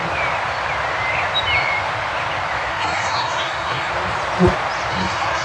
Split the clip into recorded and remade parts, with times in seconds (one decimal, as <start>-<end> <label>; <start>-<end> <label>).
0.0-2.7 recorded; 2.7-3.9 remade; 3.9-4.9 recorded; 4.9-5.4 remade

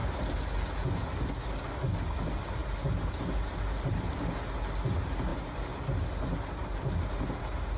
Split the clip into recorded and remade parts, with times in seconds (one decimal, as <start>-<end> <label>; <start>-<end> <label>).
0.0-2.6 recorded; 2.6-4.2 remade; 4.2-7.8 recorded

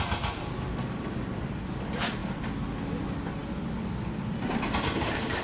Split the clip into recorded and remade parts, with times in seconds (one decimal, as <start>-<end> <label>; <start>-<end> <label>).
0.0-5.4 recorded

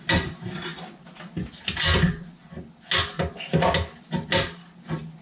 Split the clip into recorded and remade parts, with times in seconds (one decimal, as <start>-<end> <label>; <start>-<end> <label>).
0.0-5.2 recorded

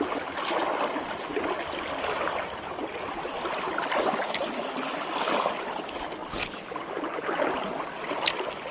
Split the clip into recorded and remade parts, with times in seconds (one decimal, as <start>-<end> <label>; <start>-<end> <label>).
0.0-8.7 recorded

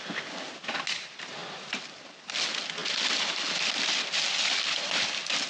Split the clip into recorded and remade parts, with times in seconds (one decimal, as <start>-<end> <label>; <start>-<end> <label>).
0.0-1.4 recorded; 1.4-2.4 remade; 2.4-2.8 recorded; 2.8-5.5 remade

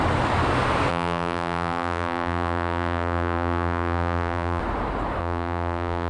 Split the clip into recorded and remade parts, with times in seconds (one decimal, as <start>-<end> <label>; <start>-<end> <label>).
0.0-0.9 recorded; 0.9-4.6 remade; 4.6-5.2 recorded; 5.2-6.1 remade

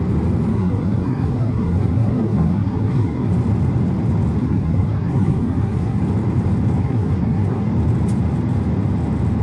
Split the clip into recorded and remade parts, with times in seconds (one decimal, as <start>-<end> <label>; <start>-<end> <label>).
0.0-0.5 recorded; 0.5-3.3 remade; 3.3-4.4 recorded; 4.4-6.0 remade; 6.0-6.8 recorded; 6.8-7.7 remade; 7.7-9.4 recorded